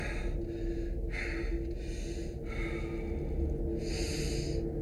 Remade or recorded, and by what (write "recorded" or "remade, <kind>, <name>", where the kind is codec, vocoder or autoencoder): recorded